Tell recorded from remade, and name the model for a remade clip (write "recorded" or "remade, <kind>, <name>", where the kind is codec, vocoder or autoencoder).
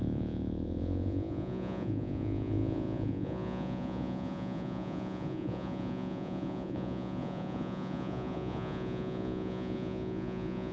remade, vocoder, Vocos